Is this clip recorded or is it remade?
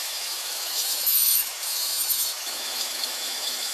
remade